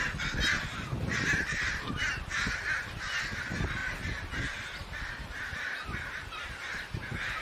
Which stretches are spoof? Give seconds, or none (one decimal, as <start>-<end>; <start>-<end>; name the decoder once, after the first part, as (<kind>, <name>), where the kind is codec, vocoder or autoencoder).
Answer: none